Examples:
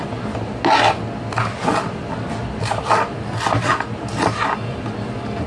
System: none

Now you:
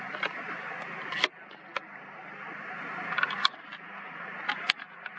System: none